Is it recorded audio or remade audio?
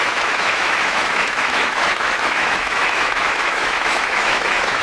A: remade